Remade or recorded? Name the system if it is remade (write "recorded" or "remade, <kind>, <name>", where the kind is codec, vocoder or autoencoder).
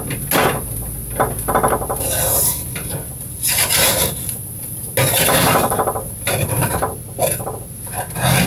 recorded